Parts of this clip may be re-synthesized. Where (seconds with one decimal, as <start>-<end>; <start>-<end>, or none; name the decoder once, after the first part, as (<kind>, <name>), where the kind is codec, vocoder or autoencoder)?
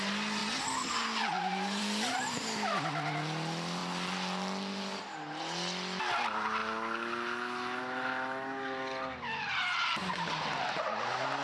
none